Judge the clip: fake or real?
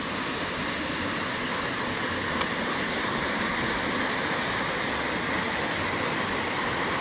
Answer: real